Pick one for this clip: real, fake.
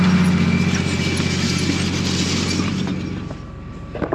real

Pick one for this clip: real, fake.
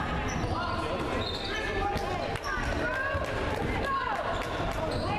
real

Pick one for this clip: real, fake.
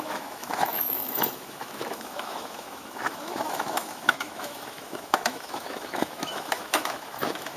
fake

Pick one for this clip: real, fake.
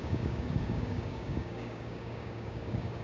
fake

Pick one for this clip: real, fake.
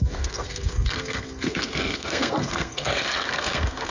fake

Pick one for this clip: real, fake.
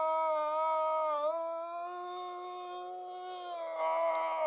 real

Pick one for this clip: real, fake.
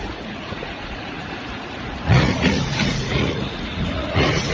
fake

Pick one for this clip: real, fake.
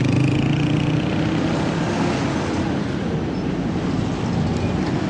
real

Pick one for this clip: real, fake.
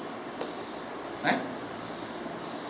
fake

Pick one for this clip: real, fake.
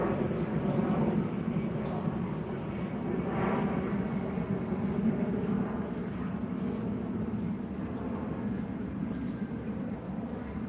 real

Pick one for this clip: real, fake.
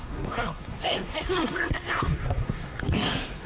fake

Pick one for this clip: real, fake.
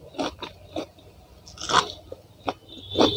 real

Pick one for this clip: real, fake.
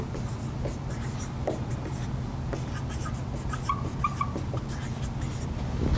real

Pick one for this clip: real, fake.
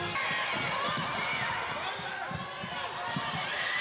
real